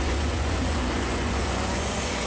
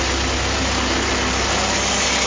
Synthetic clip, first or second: first